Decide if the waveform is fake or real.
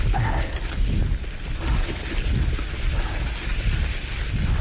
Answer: real